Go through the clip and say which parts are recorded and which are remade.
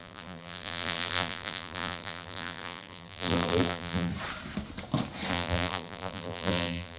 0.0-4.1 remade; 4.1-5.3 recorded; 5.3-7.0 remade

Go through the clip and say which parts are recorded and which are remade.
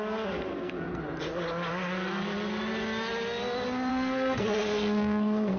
0.0-0.5 recorded; 0.5-1.0 remade; 1.0-3.9 recorded; 3.9-5.6 remade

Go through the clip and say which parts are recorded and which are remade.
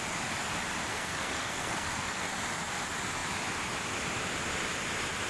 0.0-0.9 recorded; 0.9-2.3 remade; 2.3-5.3 recorded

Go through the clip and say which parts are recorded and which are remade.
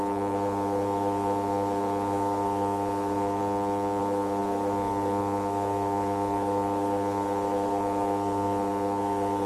0.0-3.4 remade; 3.4-4.0 recorded; 4.0-9.5 remade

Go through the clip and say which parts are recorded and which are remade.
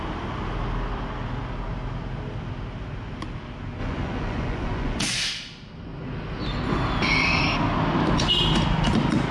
0.0-3.8 recorded; 3.8-5.0 remade; 5.0-9.3 recorded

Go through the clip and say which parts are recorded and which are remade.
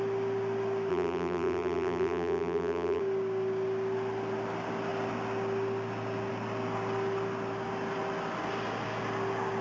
0.0-0.9 recorded; 0.9-3.0 remade; 3.0-9.6 recorded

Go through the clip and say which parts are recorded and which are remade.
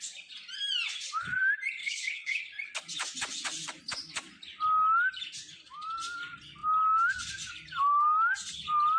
0.0-1.8 recorded; 1.8-2.4 remade; 2.4-9.0 recorded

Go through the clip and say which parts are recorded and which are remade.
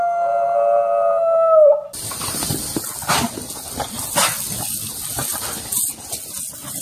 0.0-6.8 recorded